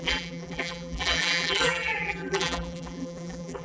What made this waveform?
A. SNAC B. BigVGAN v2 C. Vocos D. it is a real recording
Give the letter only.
B